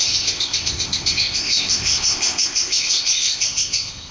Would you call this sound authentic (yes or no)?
no